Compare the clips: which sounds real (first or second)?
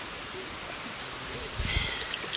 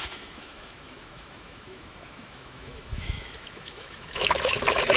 first